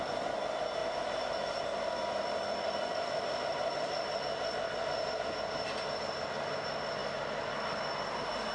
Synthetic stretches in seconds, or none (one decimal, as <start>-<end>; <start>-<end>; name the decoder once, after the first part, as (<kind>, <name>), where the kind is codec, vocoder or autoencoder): none

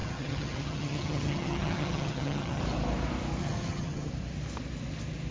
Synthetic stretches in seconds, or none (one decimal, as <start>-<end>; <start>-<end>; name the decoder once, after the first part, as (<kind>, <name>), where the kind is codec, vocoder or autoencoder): 0.0-2.6 (vocoder, HiFi-GAN); 3.4-4.1